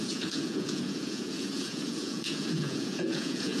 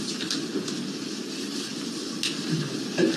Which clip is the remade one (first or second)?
first